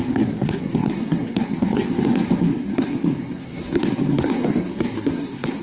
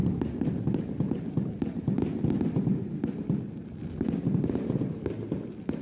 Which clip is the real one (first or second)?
second